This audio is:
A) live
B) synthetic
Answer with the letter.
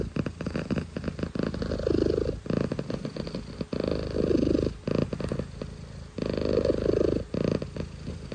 A